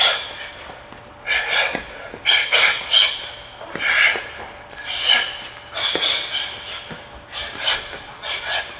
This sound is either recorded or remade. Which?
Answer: recorded